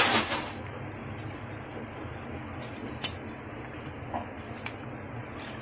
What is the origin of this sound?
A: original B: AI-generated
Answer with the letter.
A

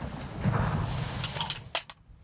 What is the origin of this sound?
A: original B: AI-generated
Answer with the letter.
A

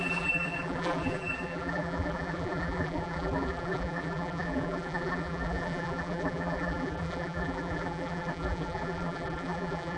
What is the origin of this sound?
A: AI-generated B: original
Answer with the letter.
A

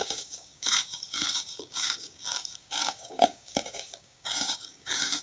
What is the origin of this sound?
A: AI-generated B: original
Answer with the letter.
A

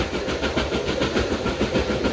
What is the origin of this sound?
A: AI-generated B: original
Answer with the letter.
B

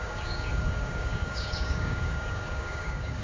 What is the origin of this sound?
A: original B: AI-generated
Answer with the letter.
B